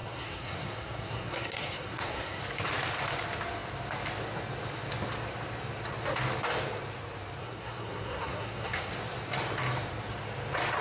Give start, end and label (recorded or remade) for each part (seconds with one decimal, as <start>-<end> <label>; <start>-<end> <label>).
0.0-2.4 remade; 2.4-7.4 recorded; 7.4-8.9 remade; 8.9-10.8 recorded

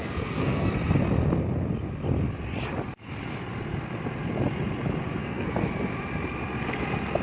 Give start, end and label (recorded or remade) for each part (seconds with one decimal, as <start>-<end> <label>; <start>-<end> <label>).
0.0-0.7 remade; 0.7-5.2 recorded; 5.2-5.7 remade; 5.7-7.2 recorded

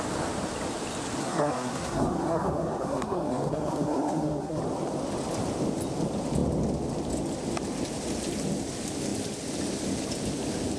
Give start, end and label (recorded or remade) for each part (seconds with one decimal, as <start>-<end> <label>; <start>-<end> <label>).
0.0-1.2 recorded; 1.2-4.6 remade; 4.6-10.8 recorded

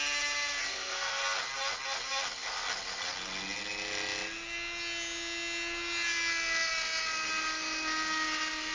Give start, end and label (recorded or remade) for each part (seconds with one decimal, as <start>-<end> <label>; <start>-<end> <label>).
0.0-0.6 recorded; 0.6-1.2 remade; 1.2-8.7 recorded

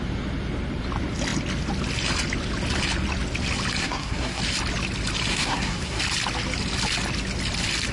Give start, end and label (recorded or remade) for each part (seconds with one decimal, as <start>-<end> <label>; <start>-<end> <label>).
0.0-3.8 recorded; 3.8-4.4 remade; 4.4-5.3 recorded; 5.3-6.0 remade; 6.0-7.9 recorded

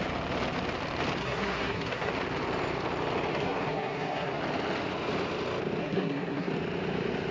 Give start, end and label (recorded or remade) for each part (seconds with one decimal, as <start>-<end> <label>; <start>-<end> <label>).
0.0-1.2 recorded; 1.2-2.1 remade; 2.1-3.3 recorded; 3.3-4.4 remade; 4.4-5.8 recorded; 5.8-6.5 remade; 6.5-7.3 recorded

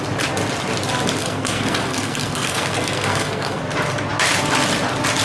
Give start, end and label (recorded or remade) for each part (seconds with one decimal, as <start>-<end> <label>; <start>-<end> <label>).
0.0-1.2 recorded; 1.2-3.6 remade; 3.6-5.2 recorded